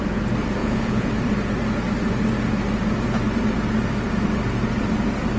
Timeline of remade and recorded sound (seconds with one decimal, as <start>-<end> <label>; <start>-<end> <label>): 0.0-0.6 recorded; 0.6-1.1 remade; 1.1-5.4 recorded